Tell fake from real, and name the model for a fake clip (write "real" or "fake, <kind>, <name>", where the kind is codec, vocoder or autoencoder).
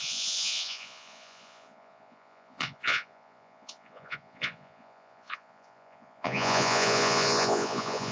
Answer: fake, vocoder, Vocos